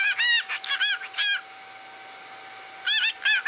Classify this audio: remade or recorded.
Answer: recorded